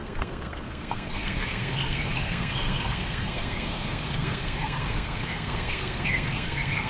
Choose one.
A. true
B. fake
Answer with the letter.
B